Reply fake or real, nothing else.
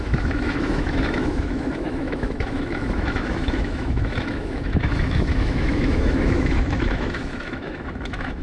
fake